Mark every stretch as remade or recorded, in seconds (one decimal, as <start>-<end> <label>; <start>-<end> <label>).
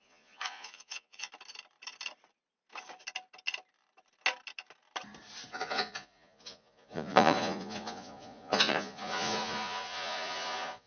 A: 0.0-1.3 remade; 1.3-5.5 recorded; 5.5-10.9 remade